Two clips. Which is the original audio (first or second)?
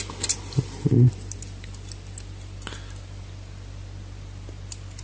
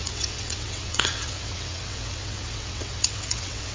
first